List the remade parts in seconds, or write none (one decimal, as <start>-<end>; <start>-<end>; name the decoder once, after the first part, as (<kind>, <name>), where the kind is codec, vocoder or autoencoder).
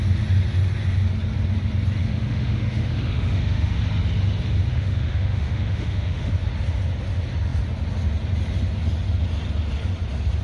2.0-3.8 (autoencoder, DAC-VAE); 4.7-6.3